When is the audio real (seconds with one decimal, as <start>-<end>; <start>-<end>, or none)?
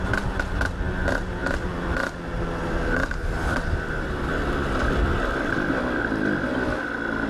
0.0-1.4; 5.5-7.3